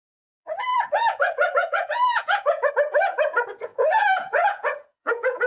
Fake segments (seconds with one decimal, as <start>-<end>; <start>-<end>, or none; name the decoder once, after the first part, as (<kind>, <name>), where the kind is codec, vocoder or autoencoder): 0.0-5.5 (vocoder, Vocos)

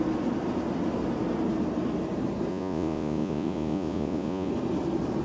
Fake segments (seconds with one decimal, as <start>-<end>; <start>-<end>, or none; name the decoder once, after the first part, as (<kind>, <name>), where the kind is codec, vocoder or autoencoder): 2.5-4.5 (vocoder, Vocos)